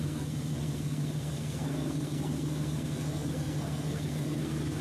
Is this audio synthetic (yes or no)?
yes